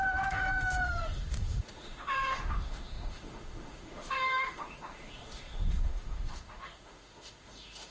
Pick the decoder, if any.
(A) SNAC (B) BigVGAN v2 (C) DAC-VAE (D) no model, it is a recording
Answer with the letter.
C